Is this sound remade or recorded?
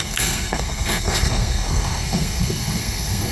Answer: remade